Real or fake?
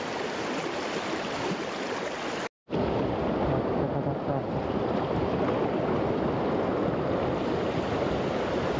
real